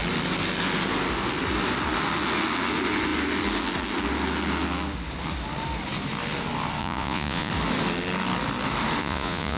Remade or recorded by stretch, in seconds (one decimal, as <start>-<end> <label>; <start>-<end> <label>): 0.0-6.8 recorded; 6.8-7.5 remade; 7.5-9.0 recorded; 9.0-9.6 remade